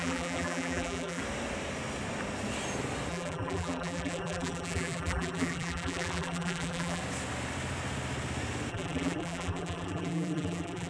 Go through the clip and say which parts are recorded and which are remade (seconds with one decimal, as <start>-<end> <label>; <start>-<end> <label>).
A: 0.0-1.2 remade; 1.2-3.1 recorded; 3.1-7.0 remade; 7.0-8.7 recorded; 8.7-10.9 remade